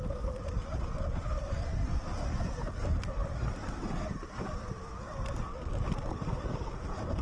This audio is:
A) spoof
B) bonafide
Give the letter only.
B